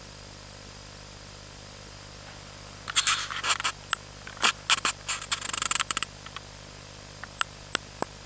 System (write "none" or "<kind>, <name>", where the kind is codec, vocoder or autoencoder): none